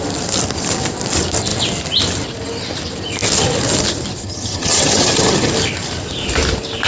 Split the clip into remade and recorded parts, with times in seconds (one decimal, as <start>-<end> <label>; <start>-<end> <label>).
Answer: 0.0-4.2 recorded; 4.2-5.5 remade; 5.5-6.9 recorded